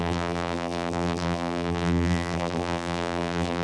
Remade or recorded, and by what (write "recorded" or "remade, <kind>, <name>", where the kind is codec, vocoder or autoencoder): remade, vocoder, BigVGAN v2